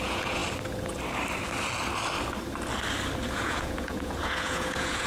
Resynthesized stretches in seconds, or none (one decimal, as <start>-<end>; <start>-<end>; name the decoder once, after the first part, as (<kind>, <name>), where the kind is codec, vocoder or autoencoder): 0.0-0.4 (vocoder, Vocos); 3.3-5.1